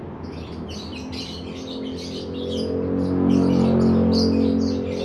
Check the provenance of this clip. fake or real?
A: real